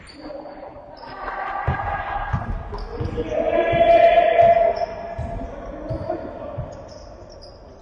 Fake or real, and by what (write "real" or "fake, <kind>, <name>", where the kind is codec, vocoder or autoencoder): real